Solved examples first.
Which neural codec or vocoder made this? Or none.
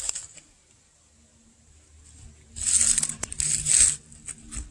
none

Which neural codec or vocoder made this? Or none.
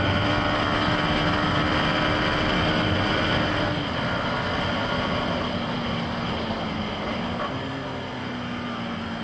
none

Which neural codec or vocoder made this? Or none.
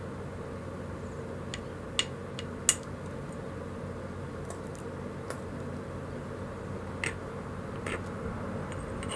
none